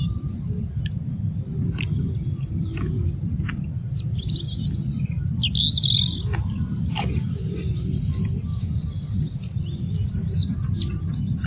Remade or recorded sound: recorded